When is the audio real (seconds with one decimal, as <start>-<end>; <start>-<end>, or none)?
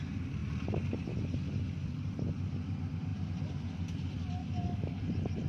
0.0-4.4; 5.0-5.5